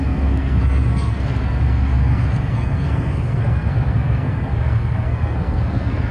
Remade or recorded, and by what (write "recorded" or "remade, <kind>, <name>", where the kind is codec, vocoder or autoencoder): remade, codec, SNAC